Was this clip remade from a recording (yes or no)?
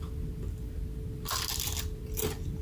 no